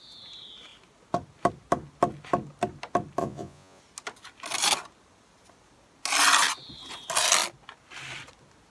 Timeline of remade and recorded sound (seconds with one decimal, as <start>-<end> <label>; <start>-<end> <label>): 0.0-3.2 recorded; 3.2-3.8 remade; 3.8-8.7 recorded